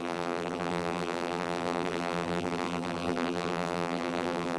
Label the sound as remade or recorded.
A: remade